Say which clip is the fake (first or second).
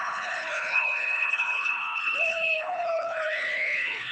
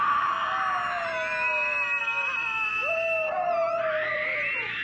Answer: first